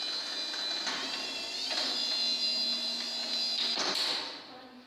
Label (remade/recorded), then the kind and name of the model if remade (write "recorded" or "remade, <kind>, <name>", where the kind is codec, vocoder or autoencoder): recorded